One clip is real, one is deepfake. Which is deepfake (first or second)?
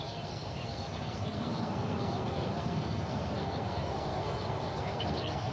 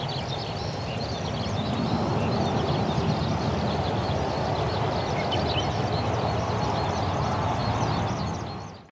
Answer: first